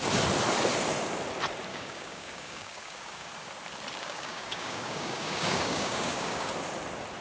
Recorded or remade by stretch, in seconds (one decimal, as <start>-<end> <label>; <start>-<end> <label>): 0.0-1.7 recorded; 1.7-3.3 remade; 3.3-4.0 recorded; 4.0-6.5 remade; 6.5-7.2 recorded